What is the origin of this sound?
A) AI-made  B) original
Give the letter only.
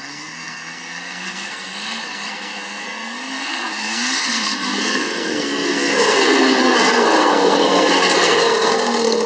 A